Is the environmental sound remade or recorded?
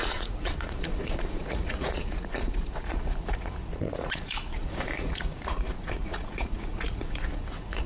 remade